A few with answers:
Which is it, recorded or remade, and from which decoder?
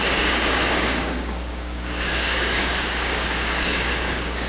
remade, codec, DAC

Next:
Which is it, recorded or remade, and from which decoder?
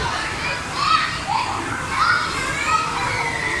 remade, vocoder, BigVGAN v2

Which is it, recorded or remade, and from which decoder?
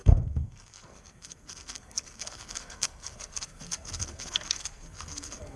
remade, codec, SNAC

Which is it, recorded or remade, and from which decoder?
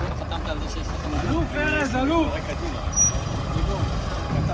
recorded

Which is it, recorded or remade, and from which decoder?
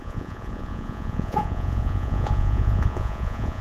remade, vocoder, Vocos